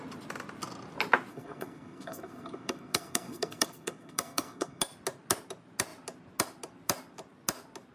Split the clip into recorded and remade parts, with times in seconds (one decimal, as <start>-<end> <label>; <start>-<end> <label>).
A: 0.0-1.3 recorded; 1.3-4.8 remade; 4.8-7.9 recorded